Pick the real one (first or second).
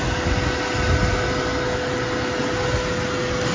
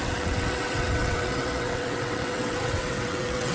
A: first